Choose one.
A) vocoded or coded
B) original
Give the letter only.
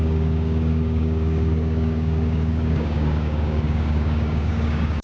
A